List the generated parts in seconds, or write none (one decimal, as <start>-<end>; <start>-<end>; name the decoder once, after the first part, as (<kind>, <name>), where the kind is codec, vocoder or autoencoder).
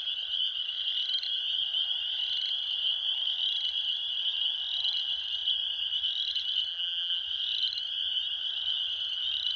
6.7-7.2 (vocoder, BigVGAN v2)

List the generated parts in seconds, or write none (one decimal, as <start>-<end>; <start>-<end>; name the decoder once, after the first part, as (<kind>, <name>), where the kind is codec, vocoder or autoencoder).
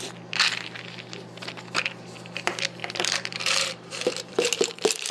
2.8-5.1 (vocoder, BigVGAN v2)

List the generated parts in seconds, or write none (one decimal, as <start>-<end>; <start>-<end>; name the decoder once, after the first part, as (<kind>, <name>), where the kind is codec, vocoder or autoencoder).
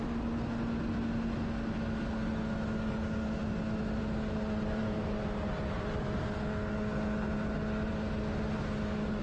none